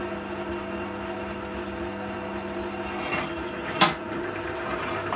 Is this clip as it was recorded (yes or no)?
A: yes